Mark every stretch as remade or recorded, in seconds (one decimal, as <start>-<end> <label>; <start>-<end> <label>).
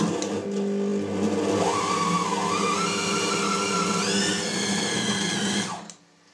0.0-6.3 recorded